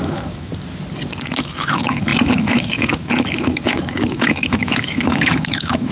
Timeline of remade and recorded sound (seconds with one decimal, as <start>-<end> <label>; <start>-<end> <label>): 0.0-0.5 remade; 0.5-1.4 recorded; 1.4-5.9 remade